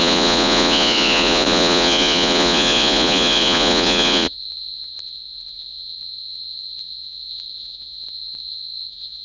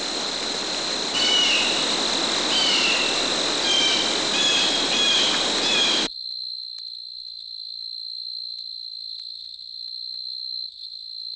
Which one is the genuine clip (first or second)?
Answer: second